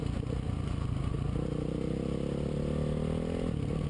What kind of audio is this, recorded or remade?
recorded